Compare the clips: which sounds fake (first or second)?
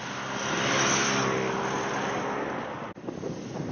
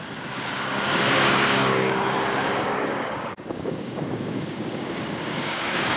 second